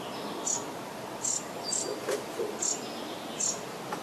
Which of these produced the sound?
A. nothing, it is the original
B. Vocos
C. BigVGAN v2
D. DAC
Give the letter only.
A